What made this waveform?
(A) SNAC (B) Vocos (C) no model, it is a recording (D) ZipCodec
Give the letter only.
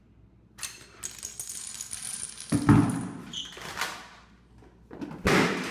C